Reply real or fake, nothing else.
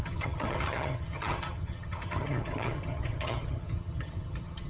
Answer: fake